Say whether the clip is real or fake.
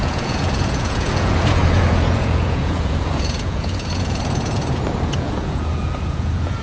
fake